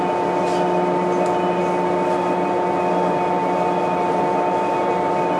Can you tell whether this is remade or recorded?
recorded